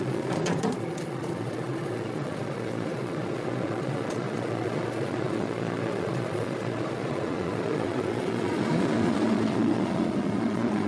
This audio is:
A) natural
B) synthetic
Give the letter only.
B